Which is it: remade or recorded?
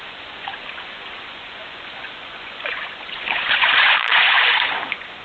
remade